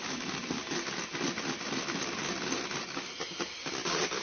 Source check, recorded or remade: recorded